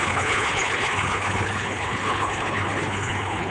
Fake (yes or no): yes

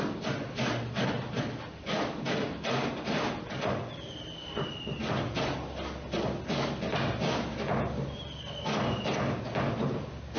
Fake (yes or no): no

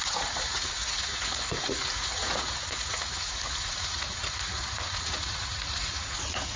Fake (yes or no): yes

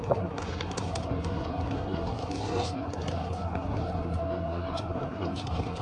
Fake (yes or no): yes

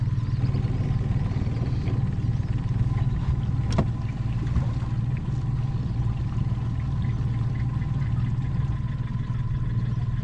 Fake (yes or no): no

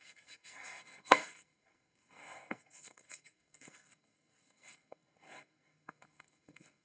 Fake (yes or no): yes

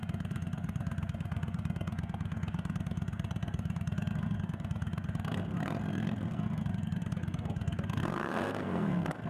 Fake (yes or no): yes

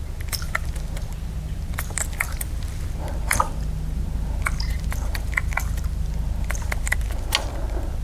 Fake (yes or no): no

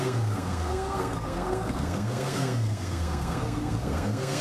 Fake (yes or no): yes